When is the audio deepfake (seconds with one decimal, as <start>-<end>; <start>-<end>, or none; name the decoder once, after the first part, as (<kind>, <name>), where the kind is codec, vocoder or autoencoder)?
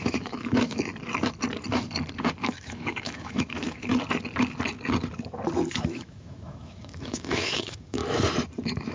0.0-0.9 (autoencoder, DAC-VAE); 2.4-3.9; 5.7-8.0